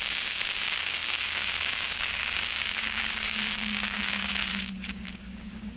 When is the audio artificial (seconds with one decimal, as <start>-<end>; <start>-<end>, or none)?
0.0-5.8